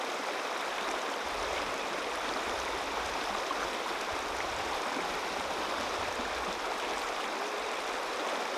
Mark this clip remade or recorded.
remade